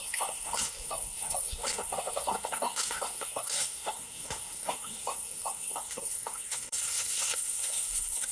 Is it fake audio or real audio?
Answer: fake